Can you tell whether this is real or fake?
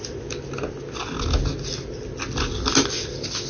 real